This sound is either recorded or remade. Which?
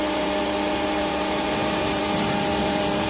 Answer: remade